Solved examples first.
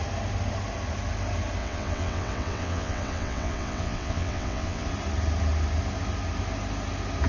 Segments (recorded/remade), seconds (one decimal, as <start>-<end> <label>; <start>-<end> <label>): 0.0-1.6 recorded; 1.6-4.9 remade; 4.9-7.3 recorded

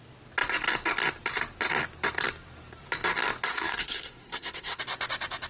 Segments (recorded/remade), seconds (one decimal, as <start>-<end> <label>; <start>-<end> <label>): 0.0-3.5 recorded; 3.5-4.8 remade; 4.8-5.5 recorded

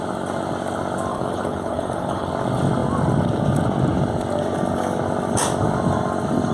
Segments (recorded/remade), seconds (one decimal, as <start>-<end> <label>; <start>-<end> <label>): 0.0-1.1 recorded; 1.1-2.3 remade; 2.3-6.5 recorded

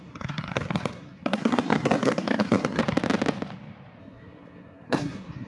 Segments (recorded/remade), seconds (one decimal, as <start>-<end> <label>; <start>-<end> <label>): 0.0-2.8 remade; 2.8-4.0 recorded; 4.0-5.5 remade

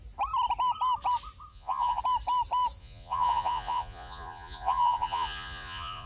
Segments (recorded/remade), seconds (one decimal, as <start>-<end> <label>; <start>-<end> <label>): 0.0-1.5 recorded; 1.5-2.0 remade; 2.0-2.8 recorded; 2.8-6.1 remade

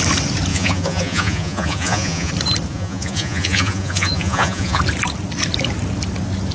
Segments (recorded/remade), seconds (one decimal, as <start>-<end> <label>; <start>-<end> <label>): 0.0-0.5 recorded; 0.5-2.3 remade; 2.3-2.7 recorded; 2.7-4.8 remade; 4.8-6.5 recorded

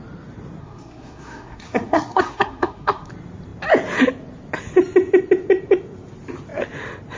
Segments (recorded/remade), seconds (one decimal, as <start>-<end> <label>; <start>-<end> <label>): 0.0-0.6 recorded; 0.6-3.1 remade; 3.1-7.2 recorded

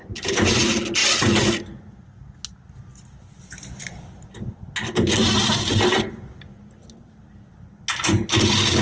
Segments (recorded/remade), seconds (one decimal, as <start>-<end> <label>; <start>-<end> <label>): 0.0-8.8 recorded